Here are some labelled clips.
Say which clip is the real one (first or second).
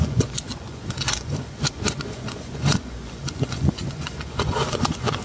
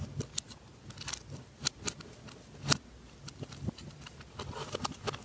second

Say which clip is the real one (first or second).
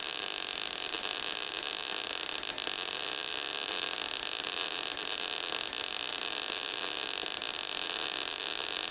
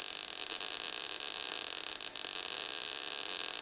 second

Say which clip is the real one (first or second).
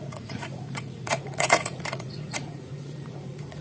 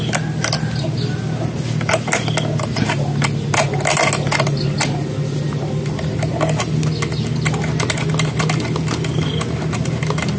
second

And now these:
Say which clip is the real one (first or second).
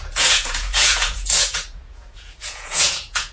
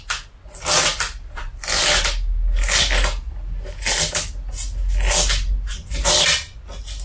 second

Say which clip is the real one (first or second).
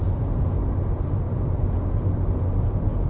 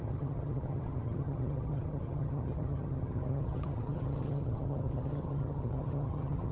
first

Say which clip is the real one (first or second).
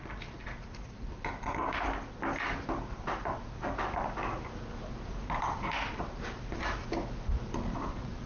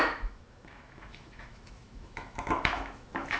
first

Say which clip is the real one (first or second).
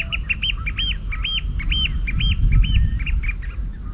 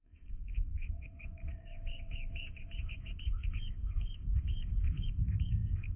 first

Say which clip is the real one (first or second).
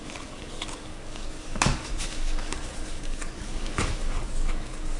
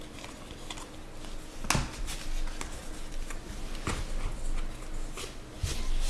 second